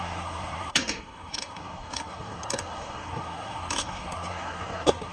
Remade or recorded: remade